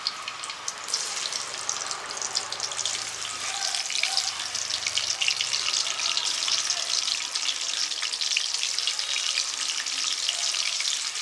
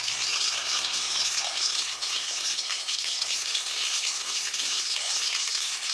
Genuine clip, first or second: first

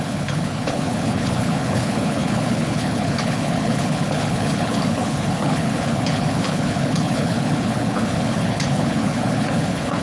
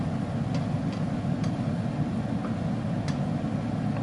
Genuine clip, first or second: second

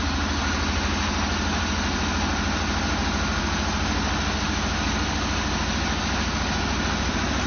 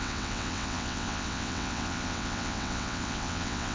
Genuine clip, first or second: first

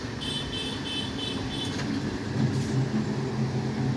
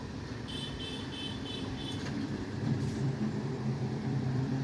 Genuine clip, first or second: first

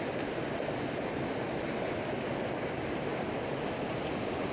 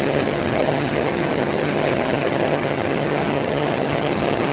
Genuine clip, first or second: first